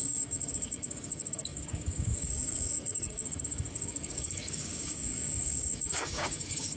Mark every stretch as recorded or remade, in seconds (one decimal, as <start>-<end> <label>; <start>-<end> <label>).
0.0-6.8 remade